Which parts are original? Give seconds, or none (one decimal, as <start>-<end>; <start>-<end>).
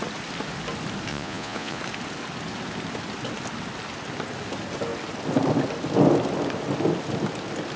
0.0-1.1; 1.8-7.8